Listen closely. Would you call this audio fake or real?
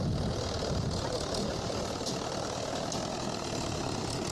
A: real